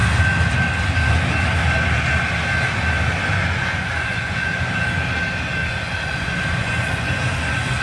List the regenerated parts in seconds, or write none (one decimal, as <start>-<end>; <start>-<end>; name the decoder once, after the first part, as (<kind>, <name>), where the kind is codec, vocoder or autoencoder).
3.3-4.6 (vocoder, Vocos); 5.6-7.8